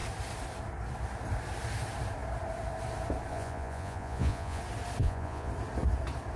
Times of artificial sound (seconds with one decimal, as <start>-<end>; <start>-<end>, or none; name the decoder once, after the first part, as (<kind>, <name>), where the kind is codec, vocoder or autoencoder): 3.3-4.6 (vocoder, Vocos); 5.0-5.5